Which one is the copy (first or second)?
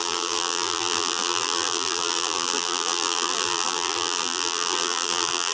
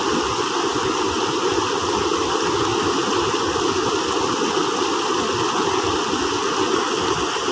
first